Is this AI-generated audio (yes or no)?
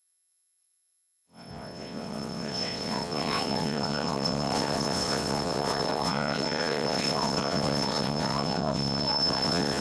yes